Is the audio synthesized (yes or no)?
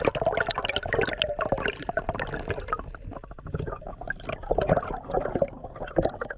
no